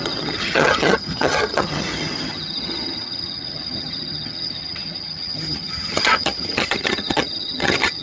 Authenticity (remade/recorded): remade